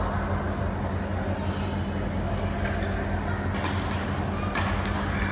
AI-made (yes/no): no